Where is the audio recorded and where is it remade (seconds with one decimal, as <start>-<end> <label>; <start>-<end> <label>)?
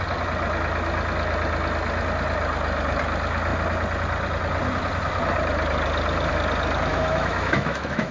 0.0-6.9 recorded; 6.9-8.1 remade